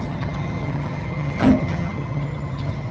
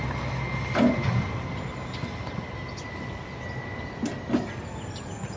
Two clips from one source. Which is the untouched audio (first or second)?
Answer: second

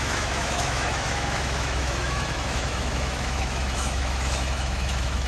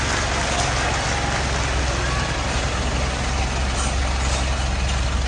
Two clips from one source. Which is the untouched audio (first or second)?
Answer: second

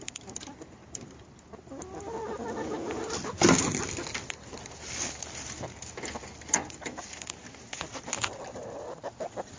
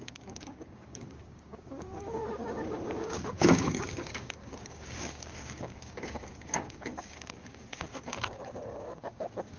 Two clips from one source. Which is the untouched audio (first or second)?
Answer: first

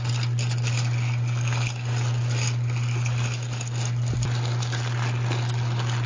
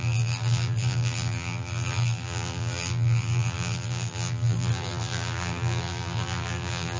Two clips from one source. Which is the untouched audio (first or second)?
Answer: first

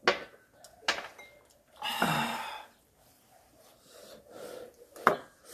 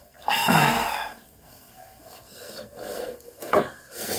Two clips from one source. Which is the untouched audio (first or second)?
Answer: first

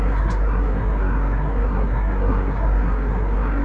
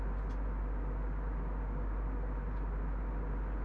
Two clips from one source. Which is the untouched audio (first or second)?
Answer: second